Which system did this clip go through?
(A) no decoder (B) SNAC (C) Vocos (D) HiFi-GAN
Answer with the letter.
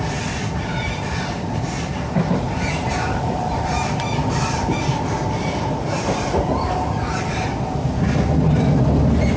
A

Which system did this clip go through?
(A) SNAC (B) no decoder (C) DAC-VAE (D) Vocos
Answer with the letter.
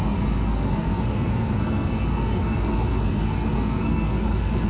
A